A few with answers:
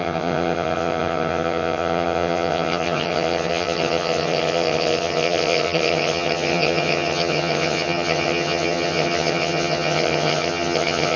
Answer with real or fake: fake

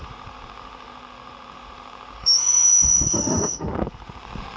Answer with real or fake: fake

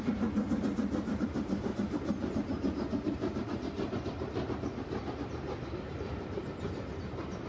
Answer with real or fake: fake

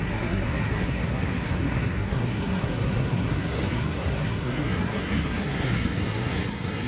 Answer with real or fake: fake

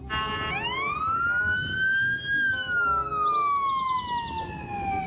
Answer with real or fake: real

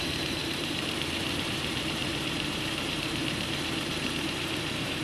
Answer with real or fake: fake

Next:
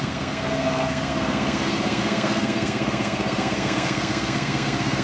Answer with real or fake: fake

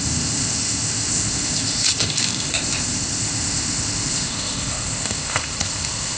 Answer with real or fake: fake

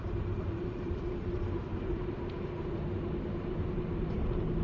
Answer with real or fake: real